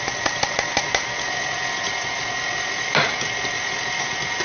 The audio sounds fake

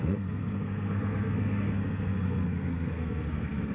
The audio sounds fake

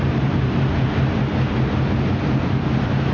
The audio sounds fake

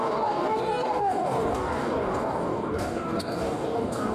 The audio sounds fake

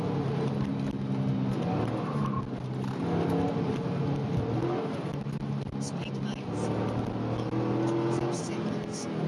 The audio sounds real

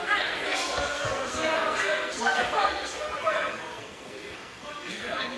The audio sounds fake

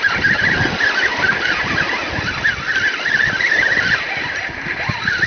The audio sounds real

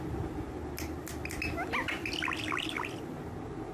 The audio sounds real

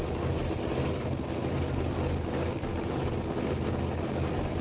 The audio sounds real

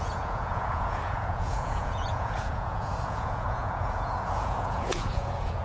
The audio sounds fake